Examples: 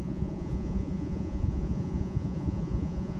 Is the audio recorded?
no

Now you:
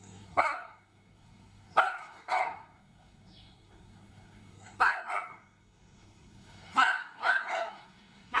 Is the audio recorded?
no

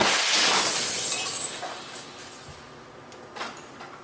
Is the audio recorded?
yes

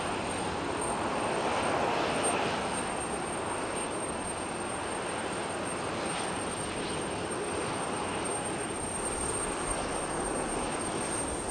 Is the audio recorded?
yes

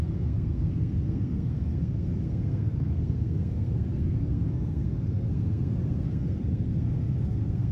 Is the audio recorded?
no